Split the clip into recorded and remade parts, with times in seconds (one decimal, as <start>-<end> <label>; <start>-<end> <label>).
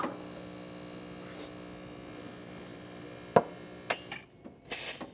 0.0-5.1 recorded